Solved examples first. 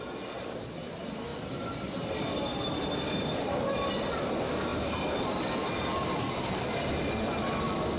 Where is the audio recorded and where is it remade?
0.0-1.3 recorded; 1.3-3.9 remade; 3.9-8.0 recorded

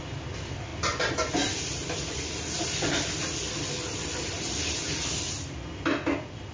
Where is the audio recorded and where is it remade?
0.0-6.5 recorded

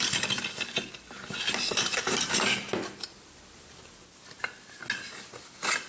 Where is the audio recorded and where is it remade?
0.0-5.9 recorded

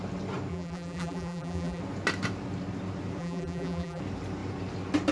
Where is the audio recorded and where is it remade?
0.0-0.5 recorded; 0.5-1.8 remade; 1.8-3.2 recorded; 3.2-4.0 remade; 4.0-5.1 recorded

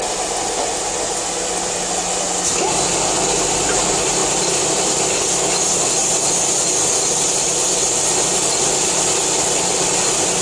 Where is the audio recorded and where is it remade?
0.0-10.4 recorded

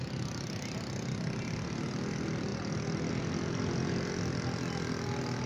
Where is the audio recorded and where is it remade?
0.0-5.5 recorded

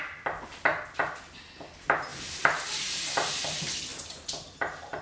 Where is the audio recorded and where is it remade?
0.0-3.9 recorded; 3.9-4.6 remade; 4.6-5.0 recorded

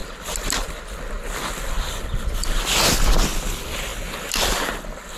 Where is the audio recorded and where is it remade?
0.0-5.2 recorded